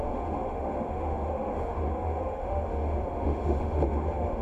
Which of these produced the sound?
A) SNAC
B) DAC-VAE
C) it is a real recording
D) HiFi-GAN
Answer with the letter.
B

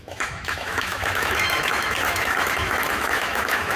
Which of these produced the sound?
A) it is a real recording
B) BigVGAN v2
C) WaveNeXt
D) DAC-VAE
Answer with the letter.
D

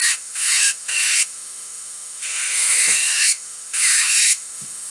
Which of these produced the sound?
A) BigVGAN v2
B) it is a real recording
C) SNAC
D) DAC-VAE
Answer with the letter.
D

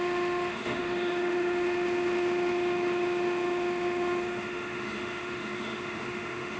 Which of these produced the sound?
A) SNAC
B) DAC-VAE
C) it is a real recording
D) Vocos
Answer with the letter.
B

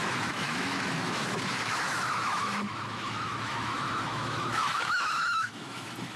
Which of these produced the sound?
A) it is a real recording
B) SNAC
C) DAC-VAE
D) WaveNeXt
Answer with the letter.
C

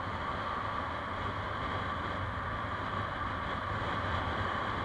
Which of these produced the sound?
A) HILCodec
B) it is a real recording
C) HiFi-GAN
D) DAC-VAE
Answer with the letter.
B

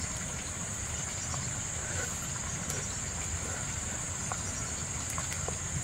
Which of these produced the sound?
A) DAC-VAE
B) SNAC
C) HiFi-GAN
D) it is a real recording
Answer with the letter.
D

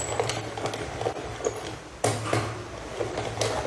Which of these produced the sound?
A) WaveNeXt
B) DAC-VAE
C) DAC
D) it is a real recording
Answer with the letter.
D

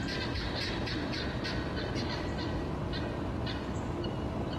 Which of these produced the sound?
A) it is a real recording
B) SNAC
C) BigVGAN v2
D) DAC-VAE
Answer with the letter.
A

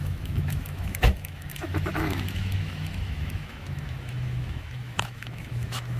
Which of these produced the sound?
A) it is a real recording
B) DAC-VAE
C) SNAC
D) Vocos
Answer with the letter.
B